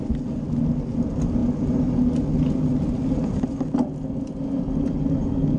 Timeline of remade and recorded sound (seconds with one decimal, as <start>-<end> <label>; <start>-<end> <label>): 0.0-5.6 recorded